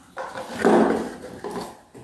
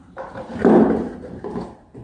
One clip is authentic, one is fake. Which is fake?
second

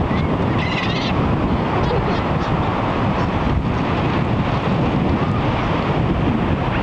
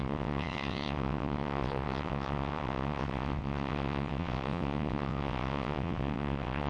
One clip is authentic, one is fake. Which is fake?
second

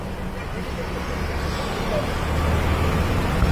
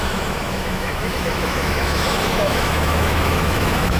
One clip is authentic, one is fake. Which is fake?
second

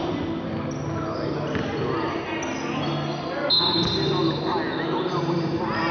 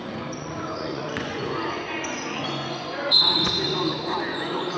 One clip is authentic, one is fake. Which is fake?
second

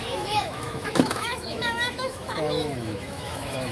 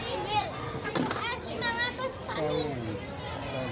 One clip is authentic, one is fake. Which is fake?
first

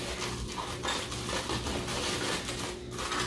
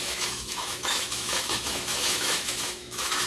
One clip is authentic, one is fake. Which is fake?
second